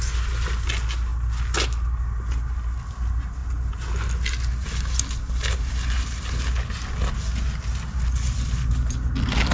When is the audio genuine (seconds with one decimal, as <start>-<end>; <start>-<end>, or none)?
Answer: 0.0-9.5